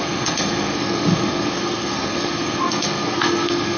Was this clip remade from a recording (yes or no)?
yes